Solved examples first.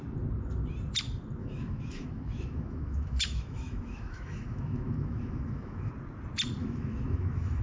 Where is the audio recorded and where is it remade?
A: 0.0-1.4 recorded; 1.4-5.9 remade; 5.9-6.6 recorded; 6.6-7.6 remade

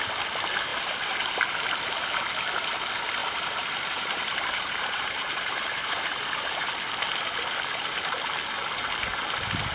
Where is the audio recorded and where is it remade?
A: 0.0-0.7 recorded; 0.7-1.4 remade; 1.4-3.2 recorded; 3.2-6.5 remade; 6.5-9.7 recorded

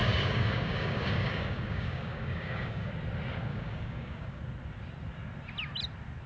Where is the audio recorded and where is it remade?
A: 0.0-2.9 remade; 2.9-3.5 recorded; 3.5-4.4 remade; 4.4-6.3 recorded

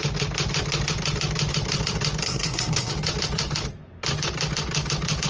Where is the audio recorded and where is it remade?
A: 0.0-2.2 recorded; 2.2-2.9 remade; 2.9-5.3 recorded

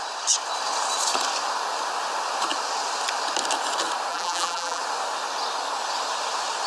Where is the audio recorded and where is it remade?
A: 0.0-4.1 recorded; 4.1-4.8 remade; 4.8-6.7 recorded

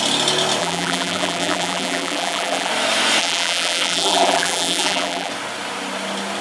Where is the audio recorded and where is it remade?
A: 0.0-0.6 recorded; 0.6-2.7 remade; 2.7-3.2 recorded; 3.2-5.3 remade; 5.3-6.4 recorded

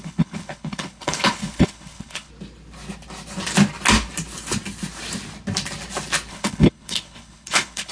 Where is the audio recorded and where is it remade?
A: 0.0-2.3 remade; 2.3-6.3 recorded; 6.3-7.9 remade

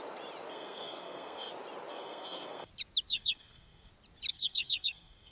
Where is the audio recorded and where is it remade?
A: 0.0-0.5 recorded; 0.5-1.5 remade; 1.5-1.9 recorded; 1.9-2.7 remade; 2.7-3.1 recorded; 3.1-3.9 remade; 3.9-4.3 recorded; 4.3-5.3 remade